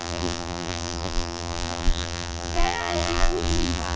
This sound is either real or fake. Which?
fake